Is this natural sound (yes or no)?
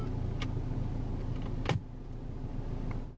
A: yes